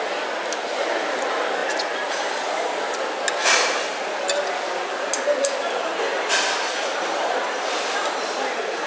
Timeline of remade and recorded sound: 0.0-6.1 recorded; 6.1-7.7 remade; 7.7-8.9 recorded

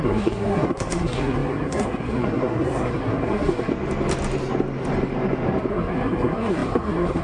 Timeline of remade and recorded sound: 0.0-3.7 remade; 3.7-5.7 recorded; 5.7-7.2 remade

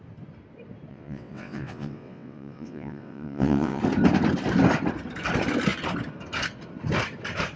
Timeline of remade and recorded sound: 0.0-0.9 recorded; 0.9-3.8 remade; 3.8-7.6 recorded

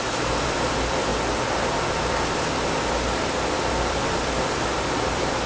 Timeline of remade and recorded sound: 0.0-1.1 remade; 1.1-3.7 recorded; 3.7-5.5 remade

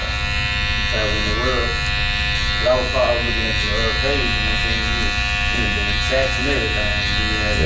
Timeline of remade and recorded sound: 0.0-7.7 recorded